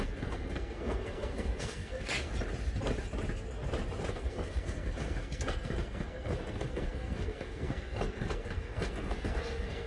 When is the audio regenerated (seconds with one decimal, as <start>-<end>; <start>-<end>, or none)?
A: 0.0-2.3; 4.1-9.9